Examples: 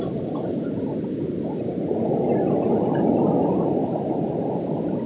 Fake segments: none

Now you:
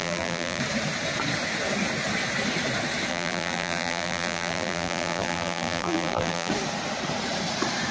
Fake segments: 0.0-0.6 (vocoder, BigVGAN v2); 3.1-6.5